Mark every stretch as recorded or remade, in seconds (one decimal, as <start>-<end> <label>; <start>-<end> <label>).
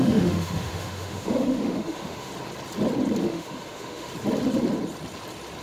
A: 0.0-2.3 remade; 2.3-3.2 recorded; 3.2-4.1 remade; 4.1-5.6 recorded